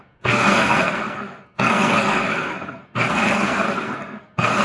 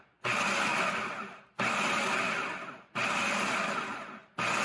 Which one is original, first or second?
second